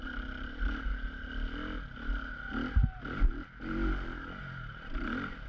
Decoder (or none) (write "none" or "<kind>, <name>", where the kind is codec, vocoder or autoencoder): none